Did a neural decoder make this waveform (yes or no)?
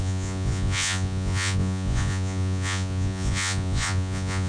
yes